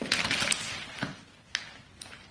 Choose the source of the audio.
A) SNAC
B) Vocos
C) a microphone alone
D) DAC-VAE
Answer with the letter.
C